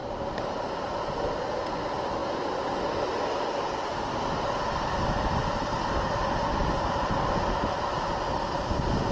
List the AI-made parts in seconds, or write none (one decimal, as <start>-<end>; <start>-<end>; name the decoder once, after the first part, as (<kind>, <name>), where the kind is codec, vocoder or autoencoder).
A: 0.0-0.5 (vocoder, BigVGAN v2)